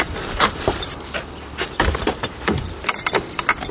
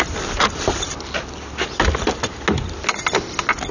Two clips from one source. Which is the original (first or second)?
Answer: second